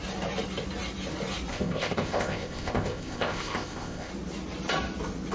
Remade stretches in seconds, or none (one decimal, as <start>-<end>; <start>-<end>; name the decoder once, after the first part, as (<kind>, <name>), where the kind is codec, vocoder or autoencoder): 1.5-4.1 (codec, ZipCodec)